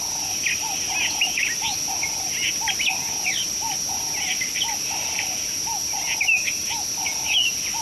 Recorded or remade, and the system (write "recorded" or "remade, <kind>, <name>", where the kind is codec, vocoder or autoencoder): recorded